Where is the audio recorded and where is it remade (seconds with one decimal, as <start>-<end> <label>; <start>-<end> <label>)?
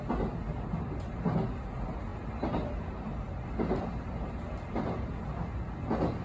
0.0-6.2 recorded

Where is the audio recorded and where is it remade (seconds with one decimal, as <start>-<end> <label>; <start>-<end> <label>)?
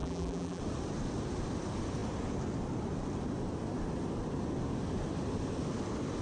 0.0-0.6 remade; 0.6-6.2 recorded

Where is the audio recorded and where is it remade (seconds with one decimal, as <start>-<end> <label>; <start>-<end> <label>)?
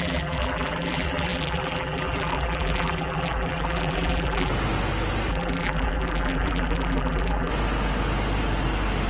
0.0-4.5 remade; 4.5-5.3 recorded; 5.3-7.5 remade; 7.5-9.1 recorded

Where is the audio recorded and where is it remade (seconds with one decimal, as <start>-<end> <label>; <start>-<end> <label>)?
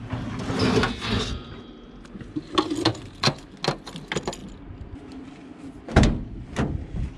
0.0-7.2 recorded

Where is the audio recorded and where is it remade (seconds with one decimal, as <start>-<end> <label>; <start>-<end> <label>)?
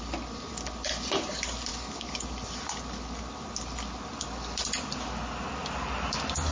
0.0-6.5 recorded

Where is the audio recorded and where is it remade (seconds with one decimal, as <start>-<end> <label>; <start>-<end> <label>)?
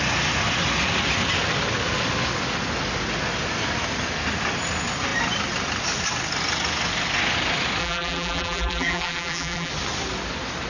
0.0-7.8 recorded; 7.8-9.7 remade; 9.7-10.7 recorded